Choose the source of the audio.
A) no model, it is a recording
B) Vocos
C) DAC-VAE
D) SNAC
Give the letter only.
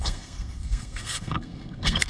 D